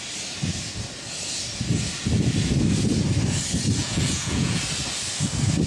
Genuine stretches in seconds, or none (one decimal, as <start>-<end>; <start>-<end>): 0.0-3.8; 4.6-5.7